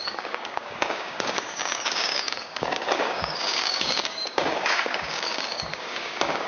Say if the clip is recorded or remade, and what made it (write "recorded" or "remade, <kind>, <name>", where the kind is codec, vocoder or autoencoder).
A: remade, codec, DAC